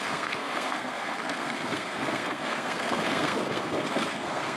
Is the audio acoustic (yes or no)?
no